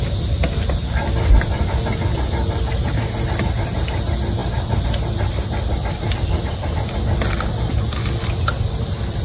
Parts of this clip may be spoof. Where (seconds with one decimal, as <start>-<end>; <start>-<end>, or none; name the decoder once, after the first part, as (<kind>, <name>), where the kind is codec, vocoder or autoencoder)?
none